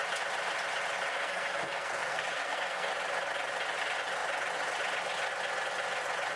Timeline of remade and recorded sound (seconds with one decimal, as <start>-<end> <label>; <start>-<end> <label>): 0.0-1.1 recorded; 1.1-2.9 remade; 2.9-6.4 recorded